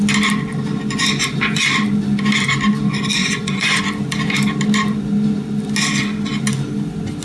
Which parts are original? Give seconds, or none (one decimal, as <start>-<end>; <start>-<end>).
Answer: 0.0-3.2; 3.8-7.2